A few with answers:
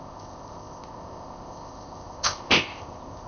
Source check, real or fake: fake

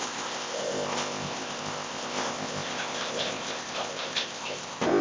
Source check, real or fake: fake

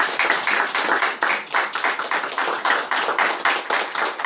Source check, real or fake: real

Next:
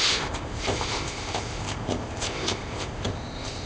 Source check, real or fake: fake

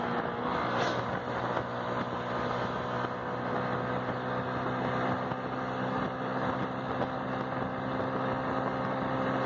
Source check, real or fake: real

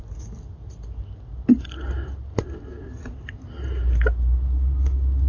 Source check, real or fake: real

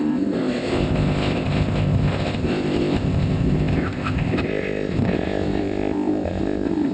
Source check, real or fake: fake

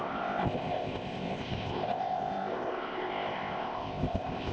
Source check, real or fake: fake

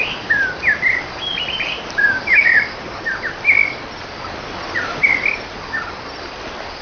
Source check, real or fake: real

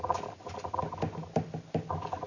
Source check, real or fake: real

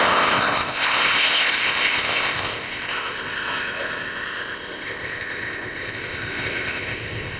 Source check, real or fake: fake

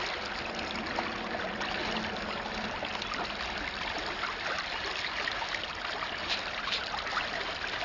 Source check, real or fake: real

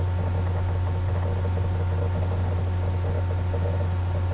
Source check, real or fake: real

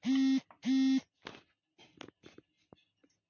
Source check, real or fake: real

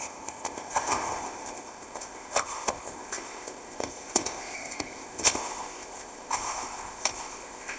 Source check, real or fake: fake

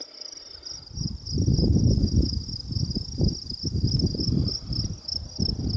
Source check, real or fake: real